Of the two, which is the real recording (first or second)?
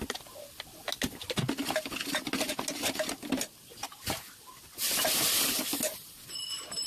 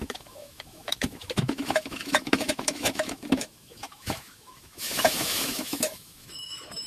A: first